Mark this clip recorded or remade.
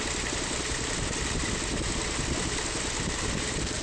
recorded